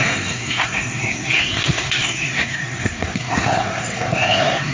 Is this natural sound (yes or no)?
no